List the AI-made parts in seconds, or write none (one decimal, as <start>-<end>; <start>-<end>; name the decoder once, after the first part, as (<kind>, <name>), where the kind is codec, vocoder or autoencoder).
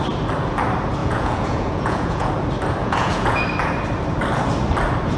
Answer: 1.0-2.3 (vocoder, Vocos); 2.8-3.4